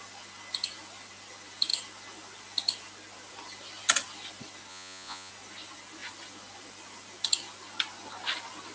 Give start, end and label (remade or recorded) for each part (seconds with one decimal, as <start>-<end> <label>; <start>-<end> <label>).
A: 0.0-4.7 recorded; 4.7-5.3 remade; 5.3-8.7 recorded